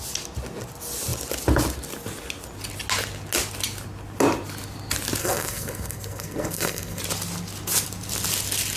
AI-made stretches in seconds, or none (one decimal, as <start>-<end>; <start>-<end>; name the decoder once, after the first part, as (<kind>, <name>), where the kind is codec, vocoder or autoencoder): 5.2-7.0 (codec, SNAC)